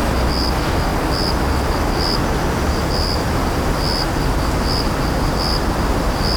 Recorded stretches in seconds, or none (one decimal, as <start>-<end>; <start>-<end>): 0.0-6.4